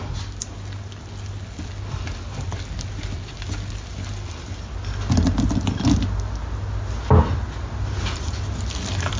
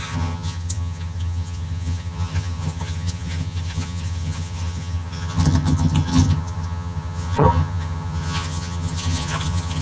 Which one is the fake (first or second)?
second